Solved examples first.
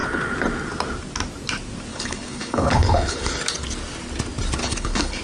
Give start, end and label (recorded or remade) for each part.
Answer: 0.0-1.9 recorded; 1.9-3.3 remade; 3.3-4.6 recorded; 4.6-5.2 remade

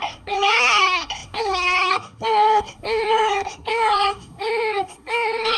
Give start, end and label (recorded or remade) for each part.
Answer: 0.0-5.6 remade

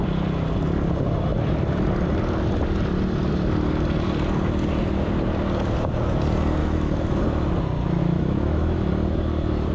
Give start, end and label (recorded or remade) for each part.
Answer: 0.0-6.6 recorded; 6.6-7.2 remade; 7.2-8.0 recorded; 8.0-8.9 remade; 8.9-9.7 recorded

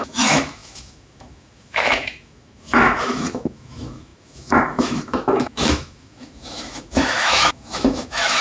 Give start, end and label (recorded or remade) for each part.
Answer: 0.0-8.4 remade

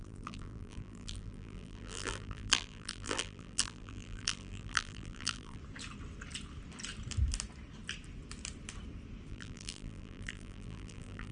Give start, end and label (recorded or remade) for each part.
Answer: 0.0-5.6 remade; 5.6-9.3 recorded; 9.3-11.3 remade

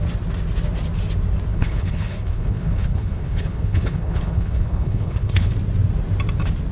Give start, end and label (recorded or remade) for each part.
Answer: 0.0-1.5 recorded; 1.5-5.5 remade; 5.5-6.7 recorded